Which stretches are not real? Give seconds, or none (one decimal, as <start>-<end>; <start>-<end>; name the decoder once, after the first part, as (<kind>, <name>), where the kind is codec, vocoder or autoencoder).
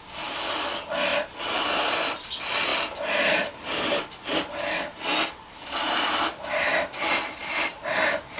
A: 7.4-8.4 (vocoder, BigVGAN v2)